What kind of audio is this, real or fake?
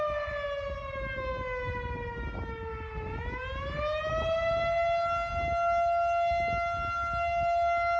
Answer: real